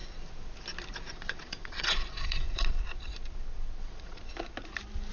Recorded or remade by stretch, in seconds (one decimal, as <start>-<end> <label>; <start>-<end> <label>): 0.0-1.1 recorded; 1.1-2.8 remade; 2.8-3.8 recorded; 3.8-4.2 remade; 4.2-5.1 recorded